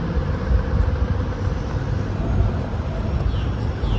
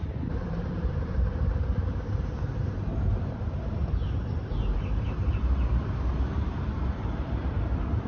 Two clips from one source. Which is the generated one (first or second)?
second